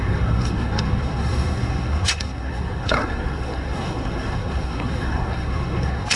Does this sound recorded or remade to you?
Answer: remade